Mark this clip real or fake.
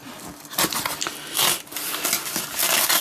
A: real